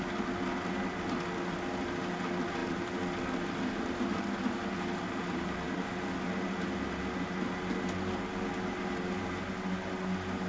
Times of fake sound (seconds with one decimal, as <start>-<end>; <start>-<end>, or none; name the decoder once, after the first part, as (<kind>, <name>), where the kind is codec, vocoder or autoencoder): 5.2-5.9 (vocoder, BigVGAN v2)